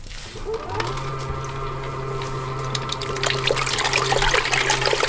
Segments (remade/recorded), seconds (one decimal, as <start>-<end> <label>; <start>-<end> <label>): 0.0-5.1 recorded